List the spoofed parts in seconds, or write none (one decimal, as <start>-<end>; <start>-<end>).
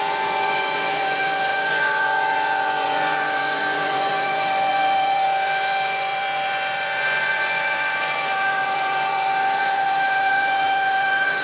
0.0-11.4